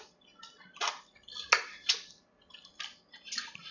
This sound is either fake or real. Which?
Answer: real